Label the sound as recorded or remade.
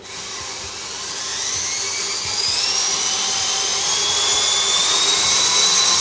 recorded